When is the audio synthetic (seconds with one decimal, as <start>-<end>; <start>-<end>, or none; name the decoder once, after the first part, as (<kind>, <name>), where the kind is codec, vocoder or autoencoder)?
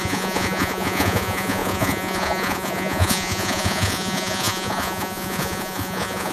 0.0-6.3 (vocoder, Vocos)